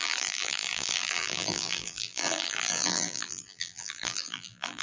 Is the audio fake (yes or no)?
yes